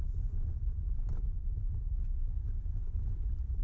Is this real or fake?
fake